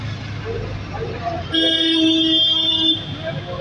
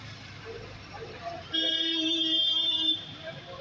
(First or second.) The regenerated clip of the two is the second